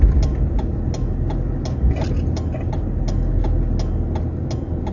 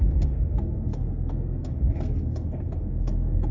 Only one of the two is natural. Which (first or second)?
first